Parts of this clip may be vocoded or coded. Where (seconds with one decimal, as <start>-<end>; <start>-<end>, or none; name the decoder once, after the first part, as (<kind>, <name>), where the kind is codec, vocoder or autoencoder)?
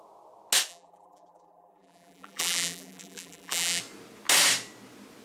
0.7-3.8 (vocoder, BigVGAN v2)